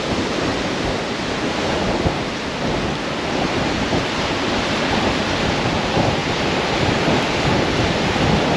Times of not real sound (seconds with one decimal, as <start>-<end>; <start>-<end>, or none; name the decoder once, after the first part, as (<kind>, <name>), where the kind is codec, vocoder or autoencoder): 6.2-8.6 (vocoder, BigVGAN v2)